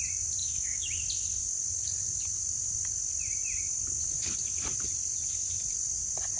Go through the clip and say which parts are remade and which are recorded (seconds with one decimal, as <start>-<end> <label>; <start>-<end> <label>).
0.0-0.4 recorded; 0.4-0.9 remade; 0.9-6.4 recorded